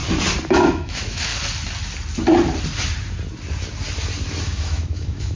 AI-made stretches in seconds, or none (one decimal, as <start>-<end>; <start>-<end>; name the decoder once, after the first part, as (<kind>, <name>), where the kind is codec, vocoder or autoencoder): 0.5-1.3 (autoencoder, DAC-VAE); 4.4-5.4